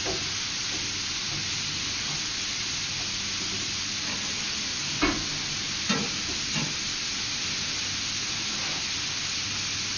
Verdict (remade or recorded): recorded